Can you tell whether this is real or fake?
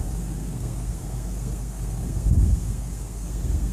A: fake